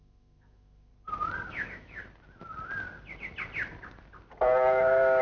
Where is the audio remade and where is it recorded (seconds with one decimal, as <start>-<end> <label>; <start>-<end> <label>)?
0.0-0.9 remade; 0.9-1.5 recorded; 1.5-2.0 remade; 2.0-4.8 recorded; 4.8-5.2 remade